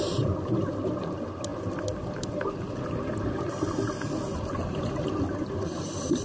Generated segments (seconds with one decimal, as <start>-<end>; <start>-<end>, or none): none